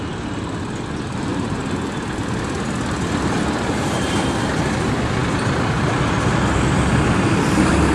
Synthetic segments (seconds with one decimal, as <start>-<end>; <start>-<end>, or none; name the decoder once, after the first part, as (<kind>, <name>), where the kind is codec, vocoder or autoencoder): 1.3-4.2 (vocoder, BigVGAN v2)